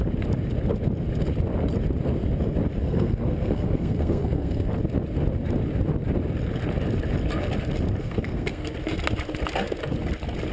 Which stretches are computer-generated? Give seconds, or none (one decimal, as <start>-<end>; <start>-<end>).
2.8-4.7; 8.0-8.7